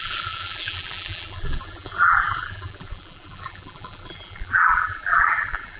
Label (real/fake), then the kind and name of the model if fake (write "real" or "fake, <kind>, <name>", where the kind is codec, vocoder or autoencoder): fake, vocoder, BigVGAN v2